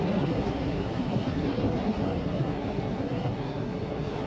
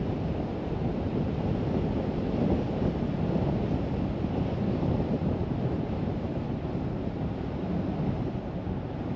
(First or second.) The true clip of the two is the second